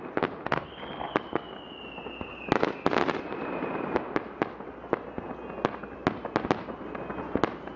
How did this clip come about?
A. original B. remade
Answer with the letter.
A